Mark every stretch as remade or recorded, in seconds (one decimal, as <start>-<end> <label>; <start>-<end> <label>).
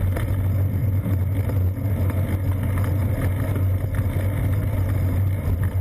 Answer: 0.0-5.8 recorded